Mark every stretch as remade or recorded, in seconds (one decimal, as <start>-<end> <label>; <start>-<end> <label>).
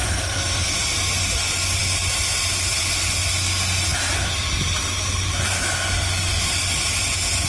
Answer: 0.0-1.0 remade; 1.0-7.5 recorded